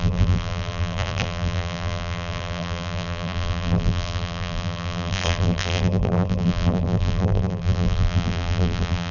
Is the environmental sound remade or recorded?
remade